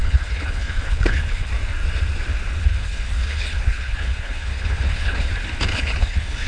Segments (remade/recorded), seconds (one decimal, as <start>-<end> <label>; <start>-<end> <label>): 0.0-1.5 remade; 1.5-2.6 recorded; 2.6-5.3 remade; 5.3-5.7 recorded; 5.7-6.5 remade